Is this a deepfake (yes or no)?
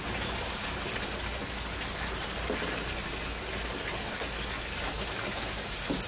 no